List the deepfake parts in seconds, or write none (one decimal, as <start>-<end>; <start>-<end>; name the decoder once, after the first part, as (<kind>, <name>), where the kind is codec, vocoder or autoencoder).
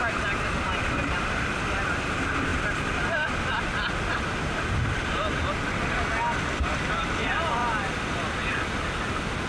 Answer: none